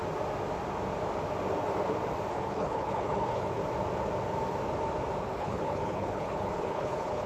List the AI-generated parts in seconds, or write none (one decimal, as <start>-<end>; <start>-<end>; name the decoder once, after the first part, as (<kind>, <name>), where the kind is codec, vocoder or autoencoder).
2.3-3.6 (codec, HILCodec); 5.2-7.3